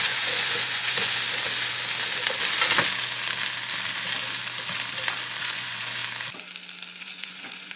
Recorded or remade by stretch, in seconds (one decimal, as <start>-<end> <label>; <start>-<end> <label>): 0.0-1.2 remade; 1.2-5.4 recorded; 5.4-6.0 remade; 6.0-7.0 recorded; 7.0-7.8 remade